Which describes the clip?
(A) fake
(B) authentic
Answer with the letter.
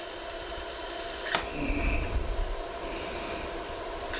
B